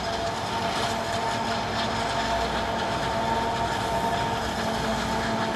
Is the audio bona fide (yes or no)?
yes